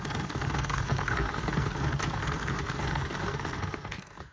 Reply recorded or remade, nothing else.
remade